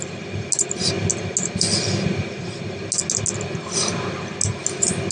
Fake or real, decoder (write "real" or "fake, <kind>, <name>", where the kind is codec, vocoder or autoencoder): real